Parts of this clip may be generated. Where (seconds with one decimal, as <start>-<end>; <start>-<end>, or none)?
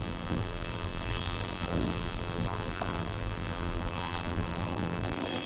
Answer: 0.0-5.5